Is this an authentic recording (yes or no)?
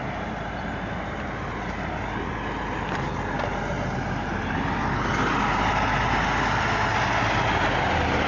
yes